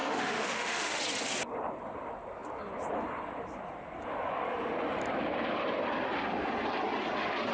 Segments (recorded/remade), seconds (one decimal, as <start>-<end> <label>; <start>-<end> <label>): 0.0-1.0 remade; 1.0-7.5 recorded